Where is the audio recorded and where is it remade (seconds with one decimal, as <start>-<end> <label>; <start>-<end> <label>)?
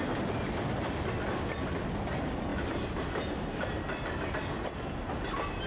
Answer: 0.0-5.7 recorded